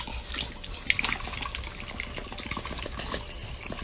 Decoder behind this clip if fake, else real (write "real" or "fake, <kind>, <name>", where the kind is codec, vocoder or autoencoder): real